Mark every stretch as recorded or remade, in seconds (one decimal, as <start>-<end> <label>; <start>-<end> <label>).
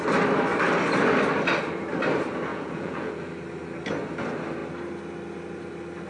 0.0-2.5 recorded; 2.5-3.3 remade; 3.3-6.1 recorded